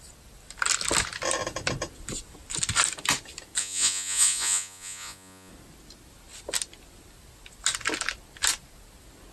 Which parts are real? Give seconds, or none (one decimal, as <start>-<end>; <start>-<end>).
0.0-3.6; 5.5-9.3